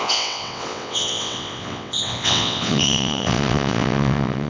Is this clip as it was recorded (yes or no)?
no